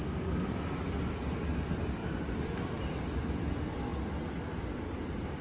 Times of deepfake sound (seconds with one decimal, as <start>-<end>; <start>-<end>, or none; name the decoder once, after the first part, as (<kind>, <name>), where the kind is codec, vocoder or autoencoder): none

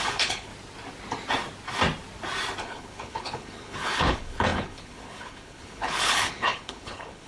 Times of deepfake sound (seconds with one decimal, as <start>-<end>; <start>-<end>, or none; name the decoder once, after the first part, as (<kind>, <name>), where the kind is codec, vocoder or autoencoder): 0.0-0.5 (codec, HILCodec); 2.6-7.3